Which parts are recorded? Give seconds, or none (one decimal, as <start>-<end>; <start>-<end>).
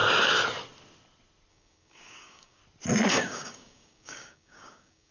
0.0-1.5; 2.6-3.1